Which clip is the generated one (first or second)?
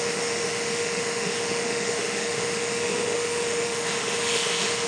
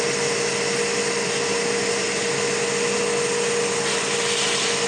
first